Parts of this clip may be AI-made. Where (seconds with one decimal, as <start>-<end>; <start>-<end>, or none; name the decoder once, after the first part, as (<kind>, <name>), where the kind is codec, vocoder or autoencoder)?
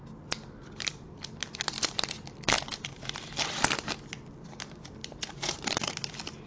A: 2.7-3.3 (vocoder, BigVGAN v2); 5.0-5.9